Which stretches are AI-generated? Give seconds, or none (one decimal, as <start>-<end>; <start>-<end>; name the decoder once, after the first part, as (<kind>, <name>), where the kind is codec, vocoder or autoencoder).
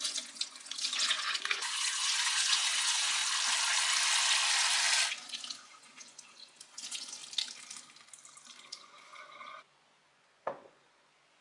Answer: 0.0-3.2 (vocoder, Vocos); 5.1-7.2; 8.6-11.4